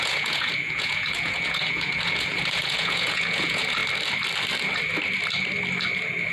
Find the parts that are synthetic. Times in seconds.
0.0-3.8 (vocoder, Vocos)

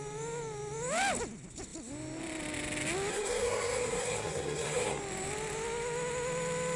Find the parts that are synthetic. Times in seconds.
3.1-5.0 (codec, SNAC)

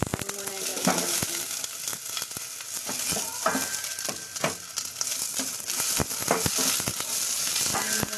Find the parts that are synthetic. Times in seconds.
none

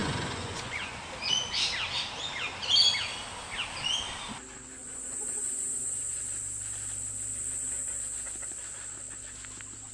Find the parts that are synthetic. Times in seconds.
0.0-1.0 (vocoder, Vocos); 4.8-6.2

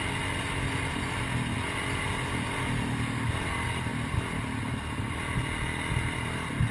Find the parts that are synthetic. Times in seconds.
none

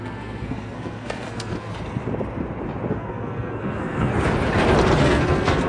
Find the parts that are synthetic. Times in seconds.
0.0-1.7 (codec, SNAC); 2.9-4.1; 5.0-5.7

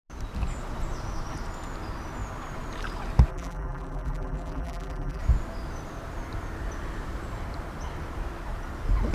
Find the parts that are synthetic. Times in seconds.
3.3-5.2 (vocoder, BigVGAN v2)